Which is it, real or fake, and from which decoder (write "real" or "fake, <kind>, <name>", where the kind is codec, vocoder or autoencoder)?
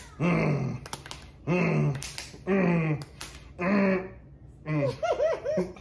real